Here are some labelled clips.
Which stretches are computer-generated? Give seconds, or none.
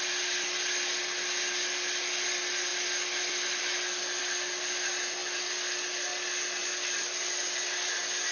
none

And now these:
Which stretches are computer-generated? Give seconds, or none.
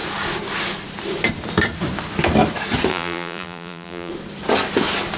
2.9-4.1 (vocoder, BigVGAN v2)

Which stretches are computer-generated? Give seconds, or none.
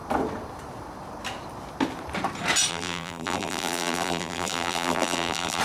2.7-5.6 (vocoder, BigVGAN v2)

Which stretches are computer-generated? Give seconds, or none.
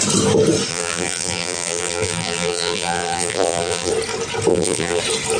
0.7-3.9 (vocoder, BigVGAN v2); 4.5-5.0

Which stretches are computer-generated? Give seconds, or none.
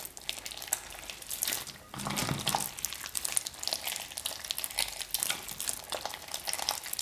2.2-2.9 (vocoder, BigVGAN v2)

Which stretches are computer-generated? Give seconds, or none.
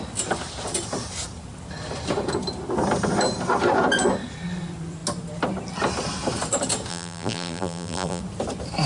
6.9-8.2 (vocoder, BigVGAN v2)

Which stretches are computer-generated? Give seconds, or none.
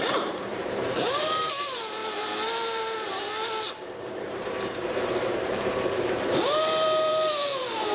0.0-7.9 (vocoder, BigVGAN v2)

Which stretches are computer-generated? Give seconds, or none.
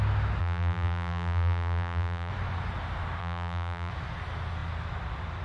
0.4-2.3 (vocoder, BigVGAN v2); 3.2-3.9